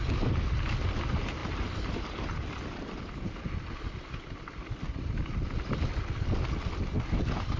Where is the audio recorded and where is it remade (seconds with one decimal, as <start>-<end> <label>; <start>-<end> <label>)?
0.0-7.6 recorded